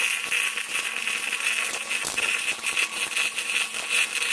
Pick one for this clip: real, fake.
real